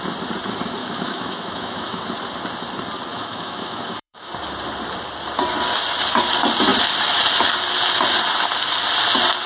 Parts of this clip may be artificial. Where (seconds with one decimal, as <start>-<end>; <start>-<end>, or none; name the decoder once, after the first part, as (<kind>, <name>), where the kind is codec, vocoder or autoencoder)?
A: 0.8-2.0 (autoencoder, DAC-VAE); 3.1-4.3